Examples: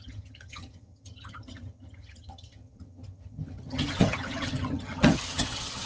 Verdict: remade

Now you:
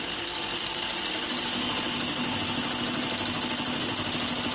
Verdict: recorded